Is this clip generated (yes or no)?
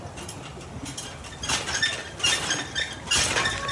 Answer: no